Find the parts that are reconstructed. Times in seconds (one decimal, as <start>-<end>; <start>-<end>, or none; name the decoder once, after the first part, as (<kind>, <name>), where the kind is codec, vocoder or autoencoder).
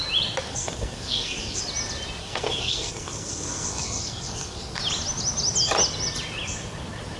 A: 0.5-1.6 (codec, SNAC); 2.2-4.8